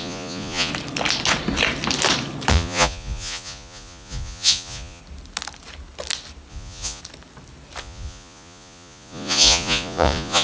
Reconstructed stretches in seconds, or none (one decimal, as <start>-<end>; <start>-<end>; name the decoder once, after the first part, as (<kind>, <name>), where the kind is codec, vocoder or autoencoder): 0.0-0.7 (vocoder, Vocos); 2.5-5.0; 6.5-7.0; 7.8-10.4